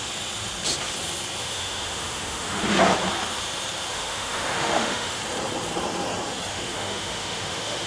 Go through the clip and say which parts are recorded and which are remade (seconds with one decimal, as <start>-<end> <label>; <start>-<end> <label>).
0.0-1.4 recorded; 1.4-2.6 remade; 2.6-3.9 recorded; 3.9-5.2 remade; 5.2-6.5 recorded; 6.5-7.9 remade